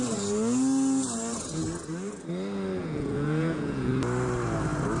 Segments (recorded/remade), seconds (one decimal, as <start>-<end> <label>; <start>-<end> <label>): 0.0-2.8 recorded; 2.8-3.9 remade; 3.9-5.0 recorded